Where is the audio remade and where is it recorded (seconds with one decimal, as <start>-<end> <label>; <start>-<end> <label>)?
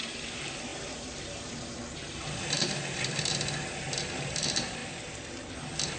0.0-6.0 recorded